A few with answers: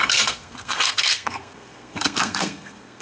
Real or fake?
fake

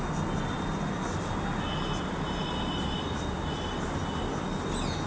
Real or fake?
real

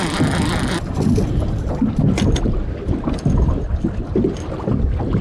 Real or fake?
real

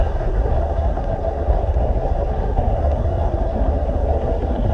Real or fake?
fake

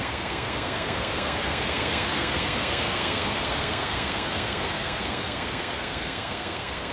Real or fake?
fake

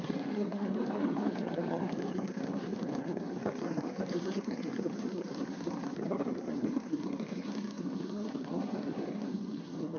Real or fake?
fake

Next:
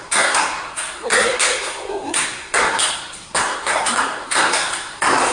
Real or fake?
fake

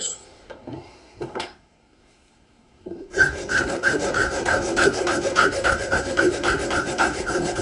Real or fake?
fake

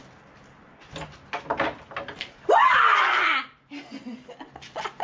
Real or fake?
real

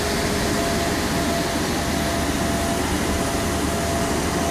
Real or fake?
real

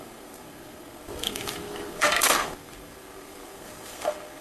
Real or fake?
fake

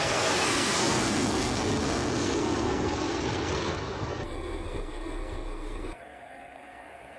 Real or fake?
fake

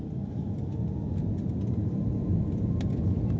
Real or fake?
real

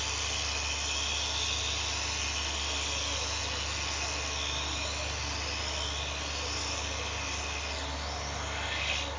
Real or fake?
real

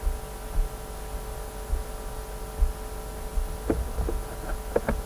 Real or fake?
real